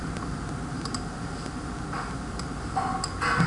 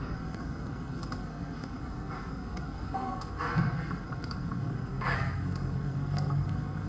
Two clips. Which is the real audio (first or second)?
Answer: first